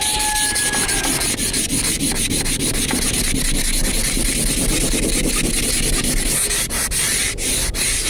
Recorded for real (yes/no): yes